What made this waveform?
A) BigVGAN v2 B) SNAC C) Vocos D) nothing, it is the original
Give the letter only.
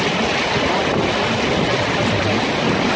D